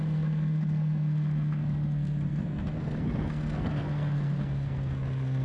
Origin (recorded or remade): remade